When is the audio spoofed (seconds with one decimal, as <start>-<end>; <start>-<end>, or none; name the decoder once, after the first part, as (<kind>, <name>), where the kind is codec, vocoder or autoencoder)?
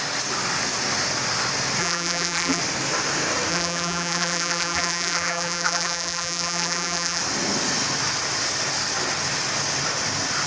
1.8-2.6 (vocoder, BigVGAN v2); 3.5-7.2